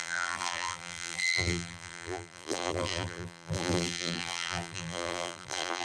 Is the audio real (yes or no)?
no